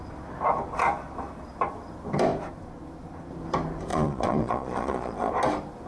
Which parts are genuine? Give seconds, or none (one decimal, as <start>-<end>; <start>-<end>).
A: 0.0-3.9; 5.3-5.9